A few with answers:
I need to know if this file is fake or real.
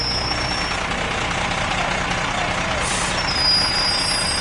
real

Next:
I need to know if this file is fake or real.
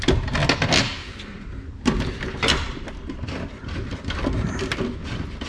real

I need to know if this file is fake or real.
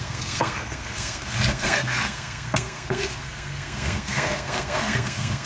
fake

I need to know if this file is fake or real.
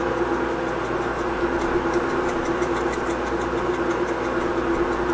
real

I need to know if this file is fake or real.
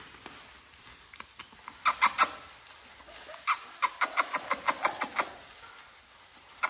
real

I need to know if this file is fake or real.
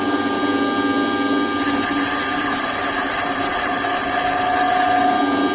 real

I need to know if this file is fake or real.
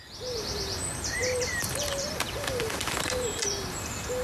fake